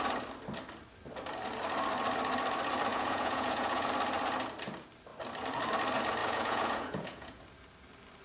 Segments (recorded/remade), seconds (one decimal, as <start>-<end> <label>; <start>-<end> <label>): 0.0-2.9 recorded; 2.9-3.9 remade; 3.9-6.2 recorded; 6.2-7.4 remade; 7.4-8.2 recorded